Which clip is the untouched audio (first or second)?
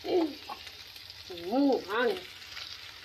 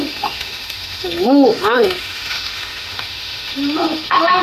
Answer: first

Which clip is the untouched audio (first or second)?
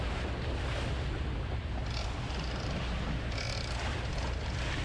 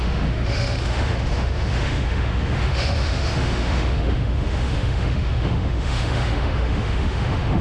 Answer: first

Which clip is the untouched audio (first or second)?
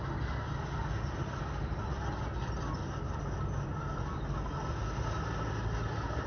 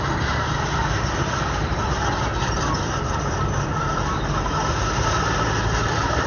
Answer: first